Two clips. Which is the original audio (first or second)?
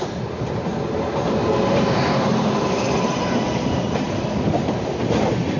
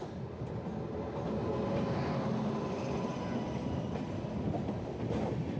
second